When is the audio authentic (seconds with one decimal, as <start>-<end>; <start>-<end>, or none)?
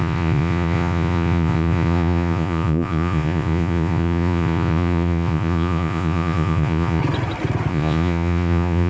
7.0-7.7